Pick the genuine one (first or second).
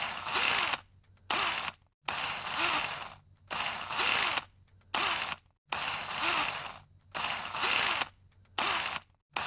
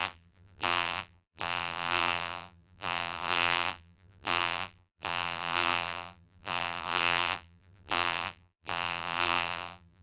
first